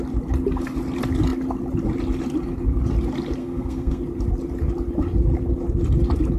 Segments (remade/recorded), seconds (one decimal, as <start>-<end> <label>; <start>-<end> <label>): 0.0-3.4 recorded; 3.4-4.0 remade; 4.0-6.4 recorded

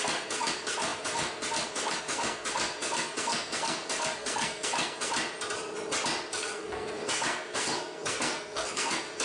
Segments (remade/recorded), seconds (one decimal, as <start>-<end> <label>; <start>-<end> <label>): 0.0-5.1 remade; 5.1-6.3 recorded; 6.3-9.2 remade

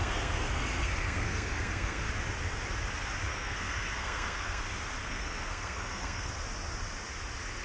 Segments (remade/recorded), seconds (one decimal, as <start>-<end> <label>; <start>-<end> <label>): 0.0-2.1 remade; 2.1-3.3 recorded; 3.3-4.6 remade; 4.6-5.0 recorded; 5.0-6.3 remade; 6.3-7.6 recorded

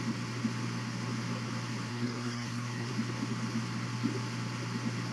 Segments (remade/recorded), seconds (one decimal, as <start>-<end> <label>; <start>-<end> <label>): 0.0-1.9 recorded; 1.9-2.9 remade; 2.9-5.1 recorded

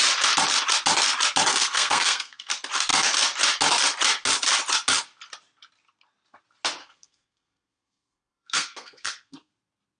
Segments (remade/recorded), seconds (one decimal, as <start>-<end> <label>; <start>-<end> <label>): 0.0-1.5 recorded; 1.5-2.5 remade; 2.5-6.8 recorded; 6.8-9.5 remade; 9.5-10.0 recorded